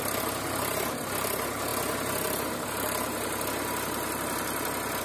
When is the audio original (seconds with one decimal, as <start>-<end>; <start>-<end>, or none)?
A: 0.0-5.0